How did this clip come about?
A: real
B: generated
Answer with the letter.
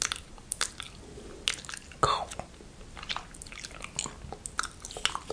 A